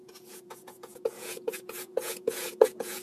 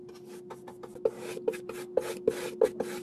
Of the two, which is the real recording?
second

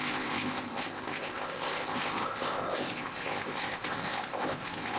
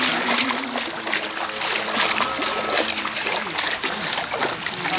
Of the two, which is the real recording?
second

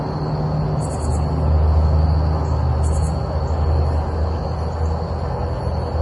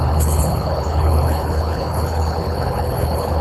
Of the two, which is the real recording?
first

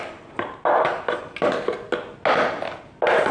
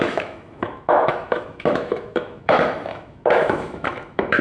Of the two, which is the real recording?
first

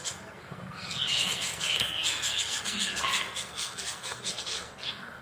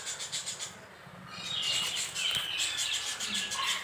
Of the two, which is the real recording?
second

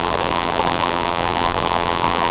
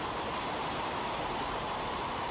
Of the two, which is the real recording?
second